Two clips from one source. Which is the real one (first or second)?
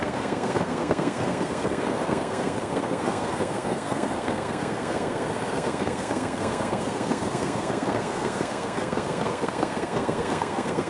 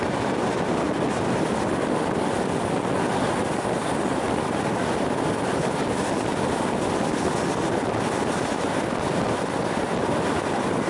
second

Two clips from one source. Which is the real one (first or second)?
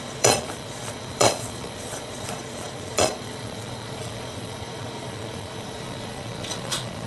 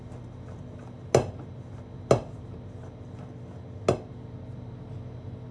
second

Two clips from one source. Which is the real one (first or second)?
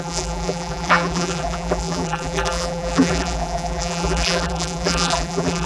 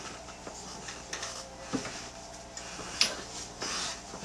second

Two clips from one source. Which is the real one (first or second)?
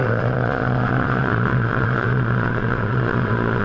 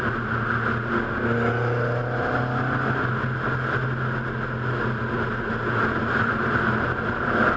second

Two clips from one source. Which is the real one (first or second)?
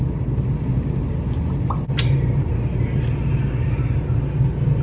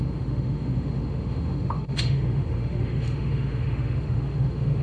first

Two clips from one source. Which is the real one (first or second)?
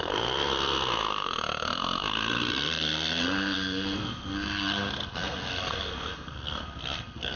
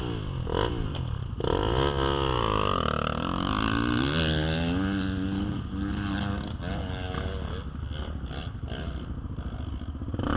second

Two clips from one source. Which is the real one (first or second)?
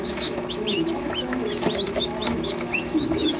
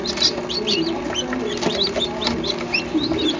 second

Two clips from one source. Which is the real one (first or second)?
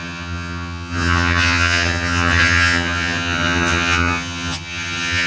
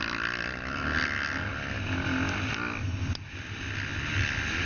second